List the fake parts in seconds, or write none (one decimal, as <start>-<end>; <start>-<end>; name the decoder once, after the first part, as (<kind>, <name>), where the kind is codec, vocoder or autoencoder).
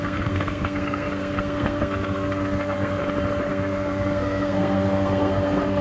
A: 0.0-3.0 (codec, SNAC); 3.5-5.8